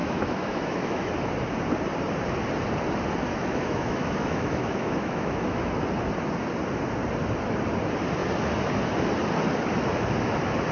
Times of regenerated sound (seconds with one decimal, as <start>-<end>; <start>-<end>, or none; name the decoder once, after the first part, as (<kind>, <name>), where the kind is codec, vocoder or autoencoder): 0.0-1.1 (autoencoder, DAC-VAE); 3.3-5.8